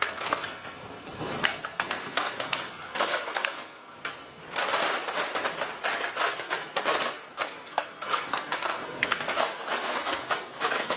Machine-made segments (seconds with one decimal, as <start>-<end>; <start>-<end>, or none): 0.0-4.4; 6.2-11.0